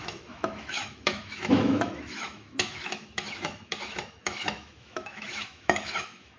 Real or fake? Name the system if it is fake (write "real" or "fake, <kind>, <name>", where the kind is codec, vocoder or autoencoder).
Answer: fake, autoencoder, DAC-VAE